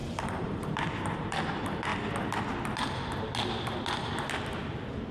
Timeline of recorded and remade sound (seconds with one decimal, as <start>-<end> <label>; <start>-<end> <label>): 0.0-1.9 remade; 1.9-5.1 recorded